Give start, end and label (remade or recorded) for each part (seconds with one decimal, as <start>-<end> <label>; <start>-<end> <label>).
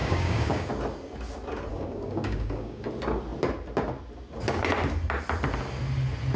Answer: 0.0-0.7 remade; 0.7-1.7 recorded; 1.7-2.8 remade; 2.8-6.4 recorded